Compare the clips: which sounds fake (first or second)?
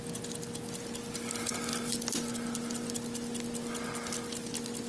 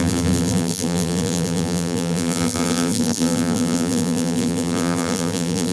second